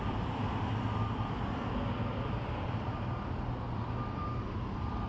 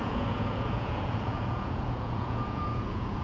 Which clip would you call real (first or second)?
first